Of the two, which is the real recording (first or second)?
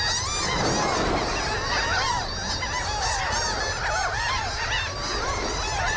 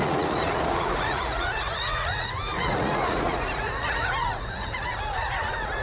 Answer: first